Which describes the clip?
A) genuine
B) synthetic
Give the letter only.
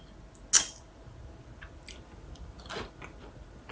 A